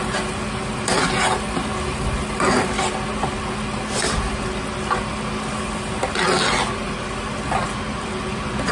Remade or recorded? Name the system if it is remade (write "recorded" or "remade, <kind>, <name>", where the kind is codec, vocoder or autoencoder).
recorded